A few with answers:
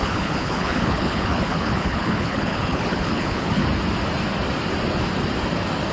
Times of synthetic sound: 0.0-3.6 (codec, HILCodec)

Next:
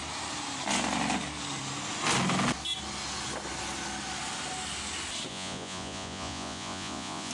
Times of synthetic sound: 5.3-7.3 (vocoder, Vocos)

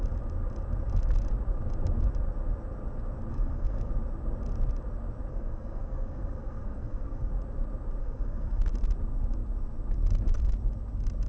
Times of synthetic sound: 3.3-3.9 (codec, SNAC); 5.3-7.3; 8.0-8.6

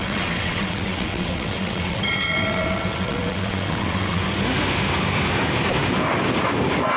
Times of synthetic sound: 0.0-4.2 (vocoder, WaveNeXt)

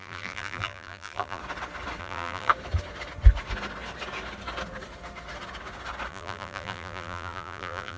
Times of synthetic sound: 0.0-1.4 (vocoder, BigVGAN v2); 2.0-2.5; 6.1-8.0

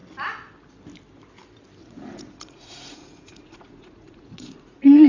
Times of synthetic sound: 1.8-5.1 (vocoder, Vocos)

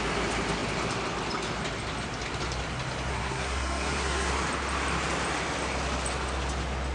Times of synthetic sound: 3.1-4.3 (codec, SNAC)